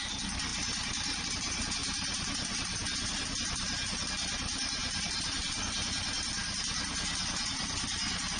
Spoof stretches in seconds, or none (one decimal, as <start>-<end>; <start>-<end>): 0.5-1.3; 1.8-3.2; 4.8-5.6